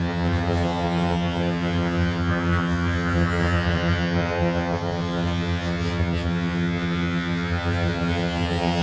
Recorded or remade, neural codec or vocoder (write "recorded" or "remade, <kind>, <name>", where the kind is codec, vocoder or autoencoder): remade, vocoder, HiFi-GAN